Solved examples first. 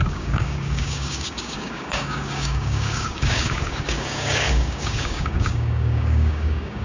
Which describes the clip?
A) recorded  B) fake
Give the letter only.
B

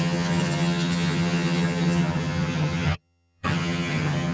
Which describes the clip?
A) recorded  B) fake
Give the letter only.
B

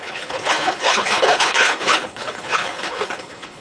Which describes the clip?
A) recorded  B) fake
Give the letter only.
B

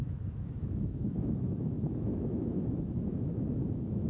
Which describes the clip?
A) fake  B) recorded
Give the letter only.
A